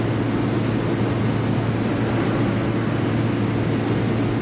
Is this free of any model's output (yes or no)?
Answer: yes